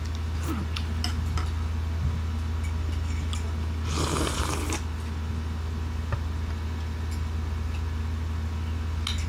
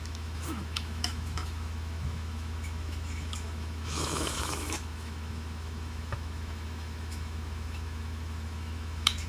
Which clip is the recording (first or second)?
first